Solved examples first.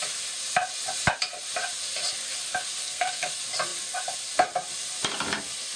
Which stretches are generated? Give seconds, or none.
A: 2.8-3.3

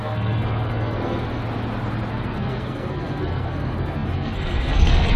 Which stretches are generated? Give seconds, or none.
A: 0.0-1.4; 2.1-5.2

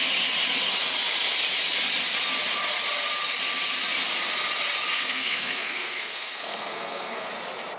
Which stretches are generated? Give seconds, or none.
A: 4.9-7.3

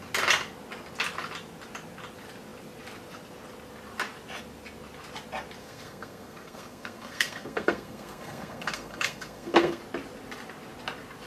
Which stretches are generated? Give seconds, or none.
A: 5.6-9.8

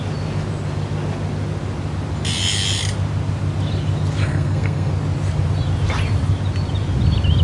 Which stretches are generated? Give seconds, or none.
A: 4.2-4.9